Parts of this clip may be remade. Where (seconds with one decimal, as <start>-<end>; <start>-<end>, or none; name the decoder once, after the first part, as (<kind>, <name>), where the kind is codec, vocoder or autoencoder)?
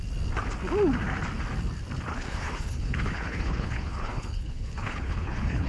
2.1-5.7 (codec, HILCodec)